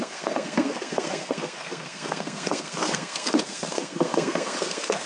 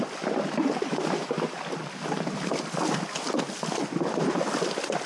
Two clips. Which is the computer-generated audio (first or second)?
first